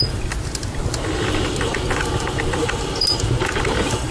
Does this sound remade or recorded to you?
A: recorded